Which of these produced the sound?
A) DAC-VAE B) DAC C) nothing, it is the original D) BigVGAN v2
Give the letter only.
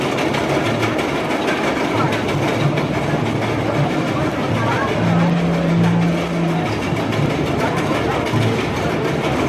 C